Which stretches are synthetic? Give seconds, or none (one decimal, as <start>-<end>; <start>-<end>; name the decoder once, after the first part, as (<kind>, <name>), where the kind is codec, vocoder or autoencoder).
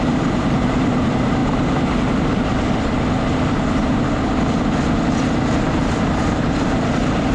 0.0-1.4 (vocoder, BigVGAN v2); 5.5-7.3